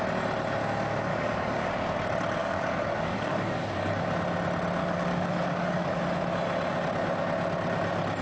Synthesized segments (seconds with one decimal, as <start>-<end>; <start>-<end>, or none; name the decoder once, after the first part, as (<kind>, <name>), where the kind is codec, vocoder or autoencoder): 1.1-1.7 (codec, DAC); 2.4-3.9; 4.8-6.0

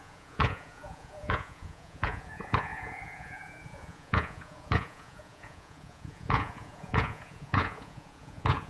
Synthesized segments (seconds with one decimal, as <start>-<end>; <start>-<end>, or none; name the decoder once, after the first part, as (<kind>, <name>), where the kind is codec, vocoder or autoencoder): 0.0-8.7 (vocoder, Vocos)

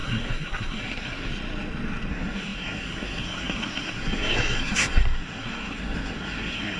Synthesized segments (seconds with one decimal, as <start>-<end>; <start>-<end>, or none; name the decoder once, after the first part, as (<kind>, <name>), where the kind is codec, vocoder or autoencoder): 0.0-1.3 (codec, SNAC); 2.1-6.8

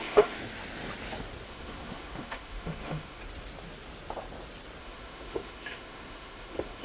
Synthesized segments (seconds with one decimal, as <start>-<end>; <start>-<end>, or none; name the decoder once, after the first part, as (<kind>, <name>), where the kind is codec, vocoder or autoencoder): 0.0-0.4 (autoencoder, DAC-VAE); 1.5-3.2; 4.8-6.8

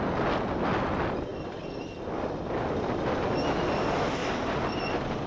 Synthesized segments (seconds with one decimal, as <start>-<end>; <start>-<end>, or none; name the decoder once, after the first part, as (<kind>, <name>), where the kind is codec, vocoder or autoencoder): none

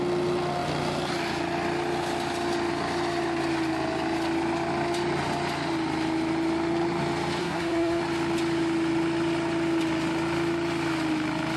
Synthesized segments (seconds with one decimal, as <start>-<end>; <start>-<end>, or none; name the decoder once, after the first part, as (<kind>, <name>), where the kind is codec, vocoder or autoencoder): 7.4-8.0 (codec, SNAC)

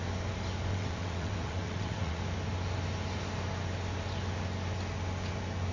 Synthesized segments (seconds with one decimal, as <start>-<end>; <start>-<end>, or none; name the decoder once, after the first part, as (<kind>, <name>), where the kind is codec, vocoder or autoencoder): 0.7-2.2 (vocoder, WaveNeXt)

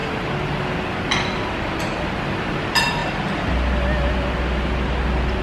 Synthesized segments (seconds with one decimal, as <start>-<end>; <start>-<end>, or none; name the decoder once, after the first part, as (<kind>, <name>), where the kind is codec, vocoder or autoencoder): none